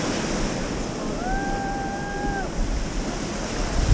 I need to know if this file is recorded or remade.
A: recorded